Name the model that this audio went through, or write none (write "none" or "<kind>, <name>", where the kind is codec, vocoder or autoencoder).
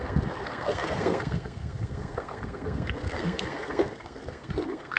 codec, SNAC